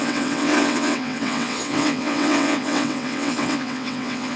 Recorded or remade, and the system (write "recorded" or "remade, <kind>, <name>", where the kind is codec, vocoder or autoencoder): remade, vocoder, WaveNeXt